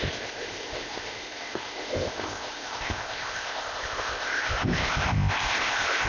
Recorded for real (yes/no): no